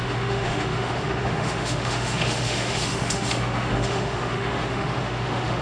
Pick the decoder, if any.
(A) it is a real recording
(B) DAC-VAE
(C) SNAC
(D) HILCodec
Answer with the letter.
B